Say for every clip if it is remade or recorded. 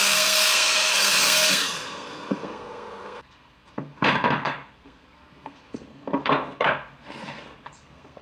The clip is remade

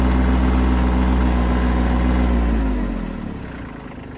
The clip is recorded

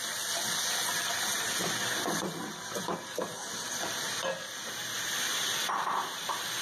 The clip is recorded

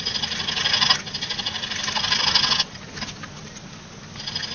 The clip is recorded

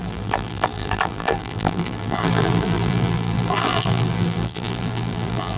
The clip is remade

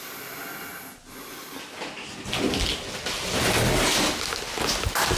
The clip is recorded